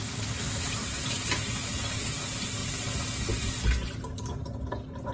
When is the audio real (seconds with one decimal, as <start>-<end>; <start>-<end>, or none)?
0.0-5.1